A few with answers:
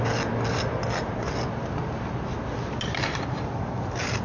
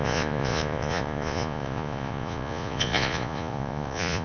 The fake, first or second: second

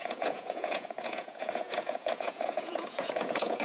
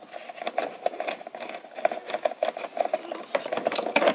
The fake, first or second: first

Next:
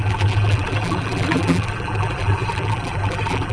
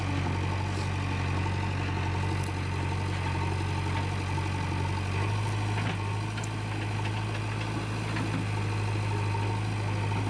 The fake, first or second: first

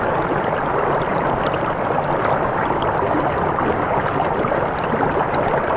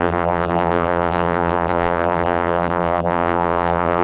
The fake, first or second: second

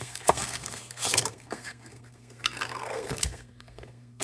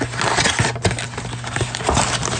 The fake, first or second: first